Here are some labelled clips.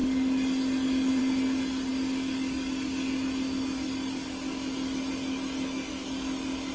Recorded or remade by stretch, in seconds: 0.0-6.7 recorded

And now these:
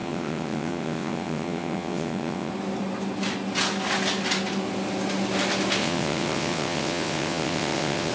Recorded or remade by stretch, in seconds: 0.0-2.5 remade; 2.5-5.8 recorded; 5.8-8.1 remade

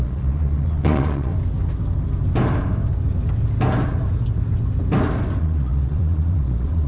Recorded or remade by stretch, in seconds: 0.0-1.3 remade; 1.3-5.4 recorded; 5.4-6.9 remade

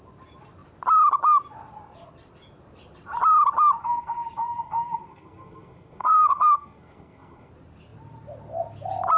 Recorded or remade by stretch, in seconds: 0.0-3.8 recorded; 3.8-7.5 remade; 7.5-9.2 recorded

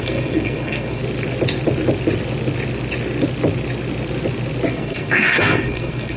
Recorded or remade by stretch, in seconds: 0.0-1.0 remade; 1.0-4.7 recorded; 4.7-6.2 remade

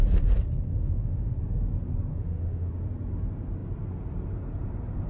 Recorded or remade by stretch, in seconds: 0.0-0.7 recorded; 0.7-1.3 remade; 1.3-2.1 recorded; 2.1-2.7 remade; 2.7-5.1 recorded

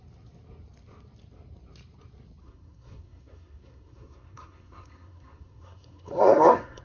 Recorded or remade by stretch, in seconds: 0.0-2.4 recorded; 2.4-6.8 remade